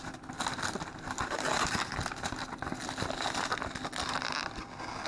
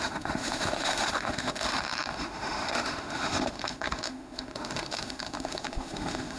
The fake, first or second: second